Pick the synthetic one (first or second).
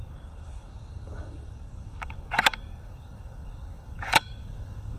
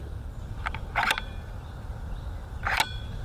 first